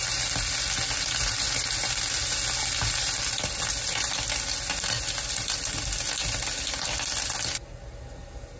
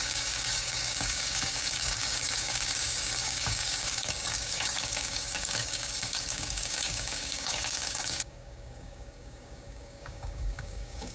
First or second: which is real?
first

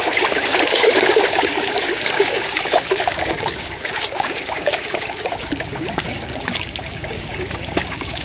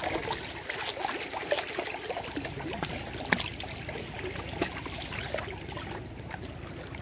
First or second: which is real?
second